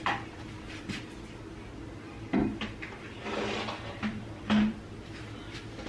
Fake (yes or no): yes